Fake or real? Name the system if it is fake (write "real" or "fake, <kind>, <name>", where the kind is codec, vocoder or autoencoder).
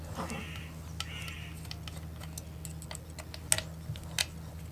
real